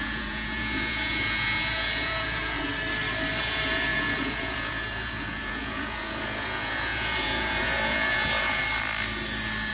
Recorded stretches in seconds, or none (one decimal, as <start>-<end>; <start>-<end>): 2.7-3.4; 8.6-9.7